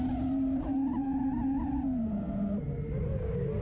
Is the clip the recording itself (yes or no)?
yes